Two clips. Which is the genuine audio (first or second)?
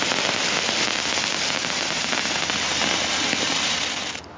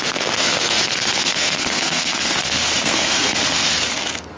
first